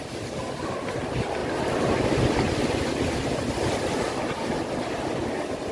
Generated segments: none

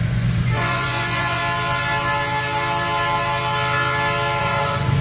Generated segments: 0.0-1.4 (vocoder, Vocos); 4.4-5.0

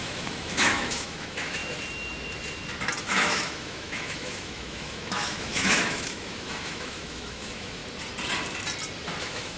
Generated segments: 0.0-1.6 (autoencoder, DAC-VAE); 3.0-7.8; 9.2-9.6

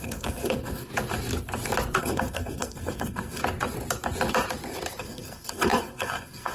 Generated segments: 0.0-0.9 (codec, SNAC); 2.0-3.4; 5.0-6.5

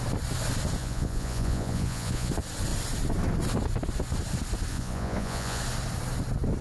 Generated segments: 0.8-2.3 (vocoder, Vocos); 4.7-5.6